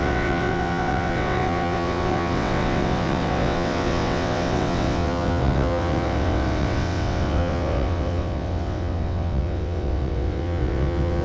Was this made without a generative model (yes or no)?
no